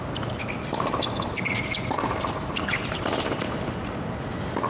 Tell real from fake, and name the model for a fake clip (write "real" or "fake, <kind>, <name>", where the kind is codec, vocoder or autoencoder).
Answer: real